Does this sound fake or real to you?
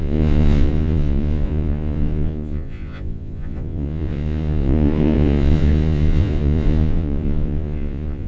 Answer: fake